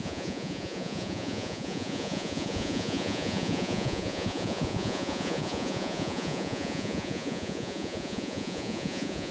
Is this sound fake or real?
fake